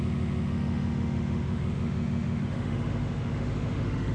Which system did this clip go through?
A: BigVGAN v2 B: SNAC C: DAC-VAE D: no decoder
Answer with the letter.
C